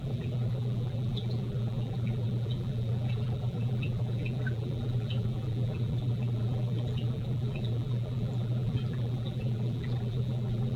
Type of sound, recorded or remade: remade